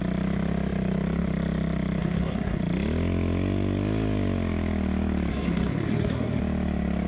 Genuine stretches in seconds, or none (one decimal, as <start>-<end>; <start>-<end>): 0.0-2.0; 2.6-5.3; 6.4-7.1